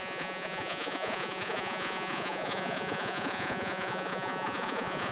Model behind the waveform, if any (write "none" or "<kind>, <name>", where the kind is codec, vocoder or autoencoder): vocoder, Vocos